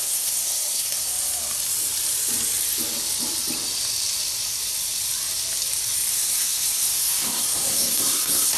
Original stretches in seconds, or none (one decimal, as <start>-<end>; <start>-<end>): 1.1-6.1